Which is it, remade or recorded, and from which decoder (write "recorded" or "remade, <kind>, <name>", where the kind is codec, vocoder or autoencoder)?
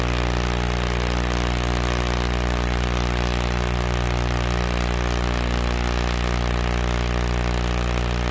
recorded